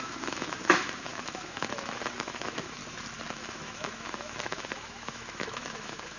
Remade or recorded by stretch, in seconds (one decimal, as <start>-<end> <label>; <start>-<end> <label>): 0.0-2.8 remade; 2.8-3.3 recorded; 3.3-6.2 remade